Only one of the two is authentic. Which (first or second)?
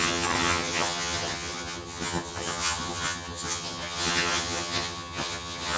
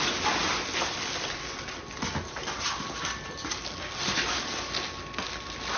second